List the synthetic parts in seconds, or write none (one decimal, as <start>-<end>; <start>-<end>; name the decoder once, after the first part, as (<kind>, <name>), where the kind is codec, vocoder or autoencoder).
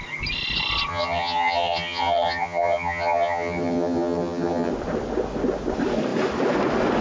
0.9-4.7 (vocoder, HiFi-GAN)